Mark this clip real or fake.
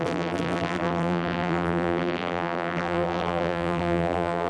fake